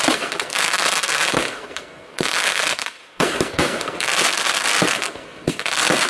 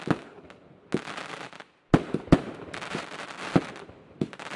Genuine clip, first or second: second